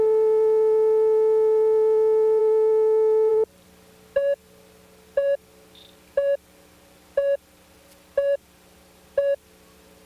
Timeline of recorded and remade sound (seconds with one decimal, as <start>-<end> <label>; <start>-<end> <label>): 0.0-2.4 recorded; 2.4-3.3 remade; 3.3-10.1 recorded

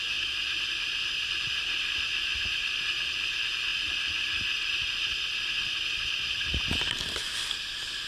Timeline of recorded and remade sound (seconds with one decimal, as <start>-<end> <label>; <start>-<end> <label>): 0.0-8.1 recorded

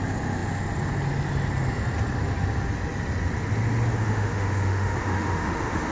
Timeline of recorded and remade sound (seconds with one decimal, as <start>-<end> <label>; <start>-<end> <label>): 0.0-4.0 recorded; 4.0-5.9 remade

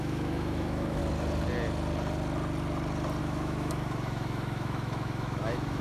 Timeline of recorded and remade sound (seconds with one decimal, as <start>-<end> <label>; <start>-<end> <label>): 0.0-1.0 remade; 1.0-3.2 recorded; 3.2-5.8 remade

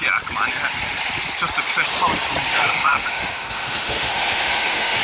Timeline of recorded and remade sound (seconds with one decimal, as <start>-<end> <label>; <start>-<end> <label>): 0.0-2.5 recorded; 2.5-5.0 remade

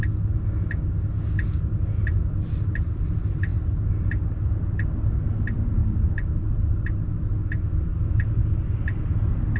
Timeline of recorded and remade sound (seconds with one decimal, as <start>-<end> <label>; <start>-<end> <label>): 0.0-9.6 recorded